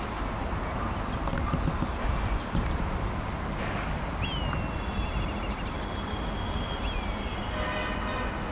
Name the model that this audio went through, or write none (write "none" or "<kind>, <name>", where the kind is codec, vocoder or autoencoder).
none